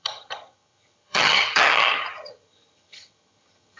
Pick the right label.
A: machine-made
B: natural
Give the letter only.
A